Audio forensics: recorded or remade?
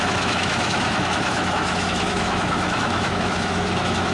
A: remade